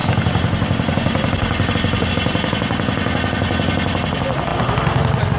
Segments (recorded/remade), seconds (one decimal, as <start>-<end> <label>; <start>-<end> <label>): 0.0-2.1 remade; 2.1-4.5 recorded; 4.5-5.4 remade

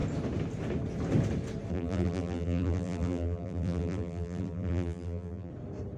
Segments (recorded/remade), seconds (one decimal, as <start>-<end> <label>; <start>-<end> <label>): 0.0-1.7 recorded; 1.7-5.5 remade; 5.5-6.0 recorded

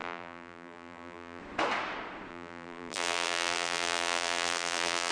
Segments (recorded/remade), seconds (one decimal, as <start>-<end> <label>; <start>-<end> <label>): 0.0-1.4 remade; 1.4-2.3 recorded; 2.3-5.1 remade

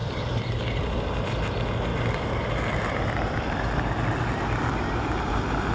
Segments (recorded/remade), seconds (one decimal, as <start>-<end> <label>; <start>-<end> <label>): 0.0-1.1 remade; 1.1-5.7 recorded

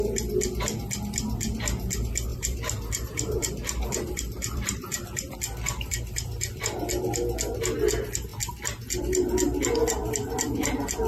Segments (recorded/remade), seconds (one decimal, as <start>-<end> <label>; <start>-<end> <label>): 0.0-2.3 recorded; 2.3-6.6 remade; 6.6-11.1 recorded